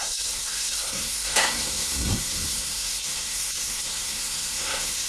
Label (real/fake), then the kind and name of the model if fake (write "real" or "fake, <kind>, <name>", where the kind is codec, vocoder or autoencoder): fake, codec, SNAC